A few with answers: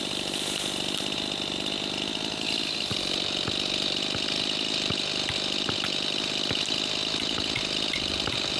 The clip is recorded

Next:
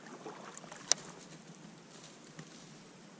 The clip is recorded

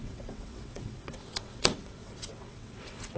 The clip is remade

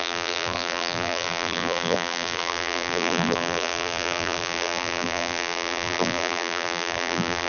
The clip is remade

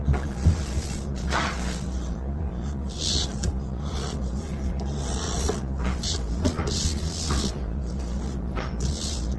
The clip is remade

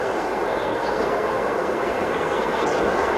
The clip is remade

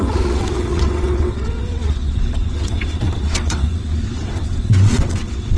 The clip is remade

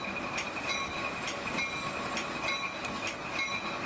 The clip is recorded